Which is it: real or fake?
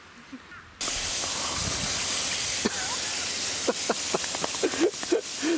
real